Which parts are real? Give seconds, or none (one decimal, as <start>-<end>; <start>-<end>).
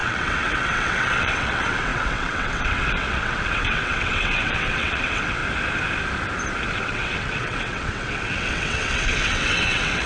5.4-6.8